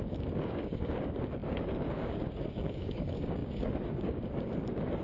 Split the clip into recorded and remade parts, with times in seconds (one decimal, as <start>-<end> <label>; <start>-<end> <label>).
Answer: 0.0-5.0 remade